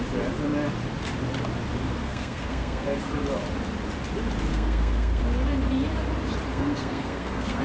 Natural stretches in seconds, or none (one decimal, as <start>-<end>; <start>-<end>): 0.0-2.0; 3.0-4.5; 5.2-6.5